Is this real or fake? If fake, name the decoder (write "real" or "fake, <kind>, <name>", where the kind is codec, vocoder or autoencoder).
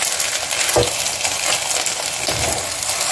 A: real